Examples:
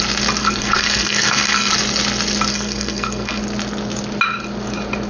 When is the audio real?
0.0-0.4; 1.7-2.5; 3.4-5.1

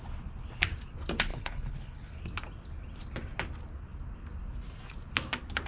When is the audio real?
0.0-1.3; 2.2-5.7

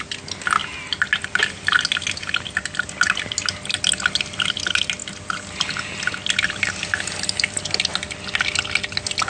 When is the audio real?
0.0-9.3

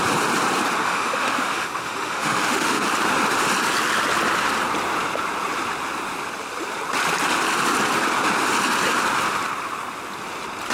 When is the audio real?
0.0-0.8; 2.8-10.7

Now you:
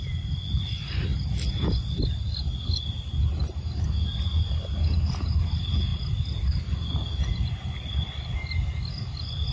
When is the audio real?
0.0-9.5